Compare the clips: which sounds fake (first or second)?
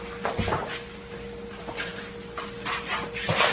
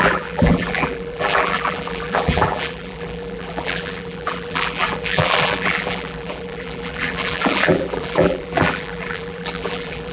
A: second